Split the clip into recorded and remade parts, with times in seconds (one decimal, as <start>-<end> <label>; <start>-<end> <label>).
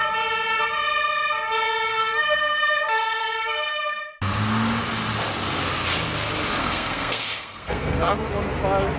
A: 0.0-1.9 recorded; 1.9-4.0 remade; 4.0-6.6 recorded; 6.6-8.3 remade; 8.3-9.0 recorded